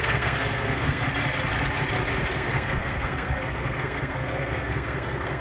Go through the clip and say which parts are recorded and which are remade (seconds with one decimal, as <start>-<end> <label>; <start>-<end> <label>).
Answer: 0.0-1.0 remade; 1.0-2.3 recorded; 2.3-5.4 remade